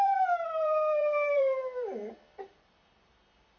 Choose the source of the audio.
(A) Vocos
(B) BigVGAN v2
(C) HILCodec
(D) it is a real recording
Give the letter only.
B